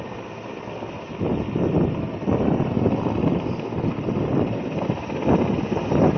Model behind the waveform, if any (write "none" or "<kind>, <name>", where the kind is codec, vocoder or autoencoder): none